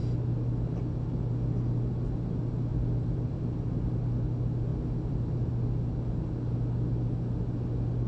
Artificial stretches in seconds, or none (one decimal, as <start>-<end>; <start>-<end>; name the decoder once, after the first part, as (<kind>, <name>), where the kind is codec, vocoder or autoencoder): 2.7-3.4 (vocoder, BigVGAN v2); 4.7-5.5